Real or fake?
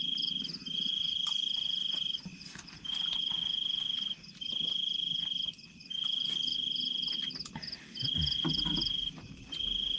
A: real